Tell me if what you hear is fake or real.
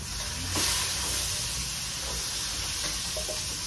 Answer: real